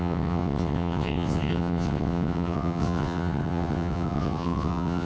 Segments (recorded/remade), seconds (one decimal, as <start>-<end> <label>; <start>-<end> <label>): 0.0-5.0 remade